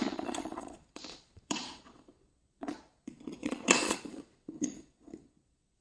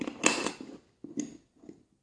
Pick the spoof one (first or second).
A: first